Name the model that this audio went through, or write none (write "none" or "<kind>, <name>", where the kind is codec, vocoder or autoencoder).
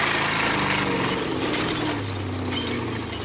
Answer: none